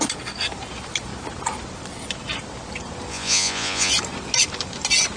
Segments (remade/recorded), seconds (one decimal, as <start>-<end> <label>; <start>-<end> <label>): 0.0-3.1 recorded; 3.1-3.9 remade; 3.9-5.2 recorded